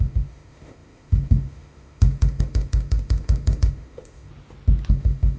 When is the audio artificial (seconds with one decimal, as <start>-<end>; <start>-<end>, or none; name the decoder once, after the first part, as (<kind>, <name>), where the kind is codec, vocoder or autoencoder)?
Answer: 0.0-4.3 (autoencoder, DAC-VAE); 4.9-5.4